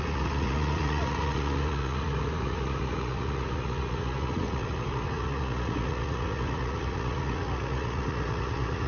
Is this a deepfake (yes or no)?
yes